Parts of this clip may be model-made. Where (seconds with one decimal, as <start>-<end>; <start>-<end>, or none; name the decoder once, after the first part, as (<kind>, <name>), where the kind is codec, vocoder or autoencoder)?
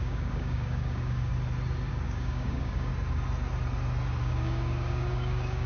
0.0-1.3 (codec, DAC); 1.9-2.9; 4.2-5.7